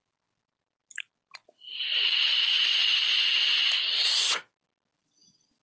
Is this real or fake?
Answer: real